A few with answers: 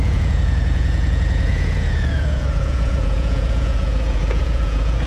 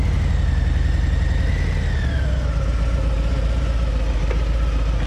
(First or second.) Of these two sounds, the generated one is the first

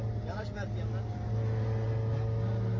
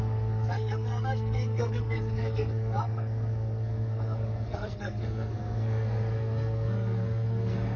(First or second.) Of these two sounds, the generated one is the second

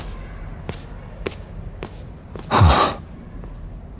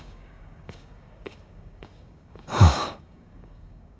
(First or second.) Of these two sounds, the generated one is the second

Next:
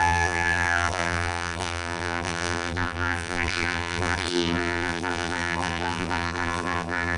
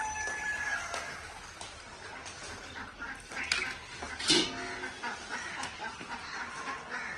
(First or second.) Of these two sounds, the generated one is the first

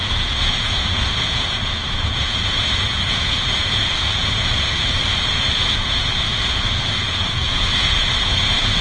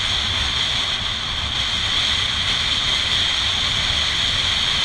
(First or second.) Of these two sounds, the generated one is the first